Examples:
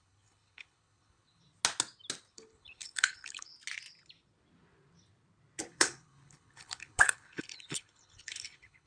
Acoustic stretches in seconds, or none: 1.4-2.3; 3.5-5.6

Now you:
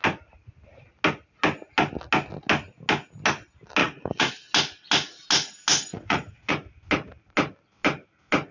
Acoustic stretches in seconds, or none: 0.0-3.8; 4.3-5.9; 6.5-8.5